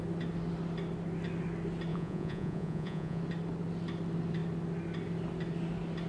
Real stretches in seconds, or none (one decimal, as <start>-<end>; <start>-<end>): 0.0-1.9; 3.2-6.1